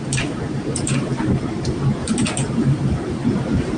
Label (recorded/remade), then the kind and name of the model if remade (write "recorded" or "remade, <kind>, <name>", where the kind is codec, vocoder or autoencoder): remade, vocoder, BigVGAN v2